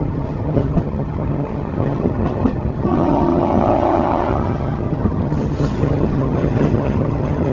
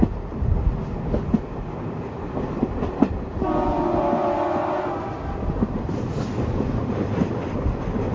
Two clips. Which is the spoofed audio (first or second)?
first